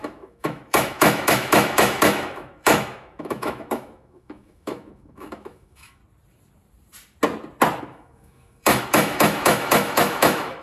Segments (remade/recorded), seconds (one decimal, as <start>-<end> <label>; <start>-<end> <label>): 0.0-6.0 remade; 6.0-7.8 recorded; 7.8-10.6 remade